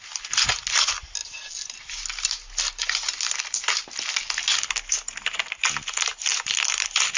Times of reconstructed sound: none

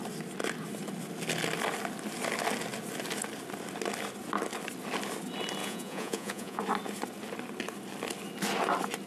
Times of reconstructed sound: 5.6-6.6 (vocoder, Vocos)

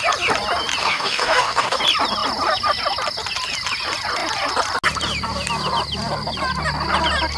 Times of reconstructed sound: 0.8-1.8 (codec, DAC)